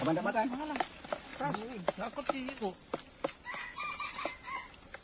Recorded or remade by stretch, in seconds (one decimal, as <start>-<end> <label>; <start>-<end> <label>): 0.0-5.0 recorded